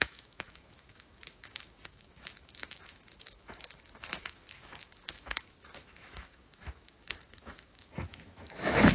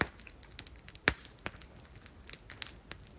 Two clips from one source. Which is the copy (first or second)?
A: first